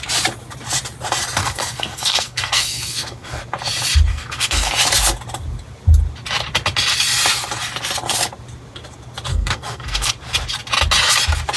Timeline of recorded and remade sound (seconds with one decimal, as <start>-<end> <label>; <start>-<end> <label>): 0.0-1.4 recorded; 1.4-3.4 remade; 3.4-4.1 recorded; 4.1-4.7 remade; 4.7-9.3 recorded; 9.3-10.1 remade; 10.1-11.6 recorded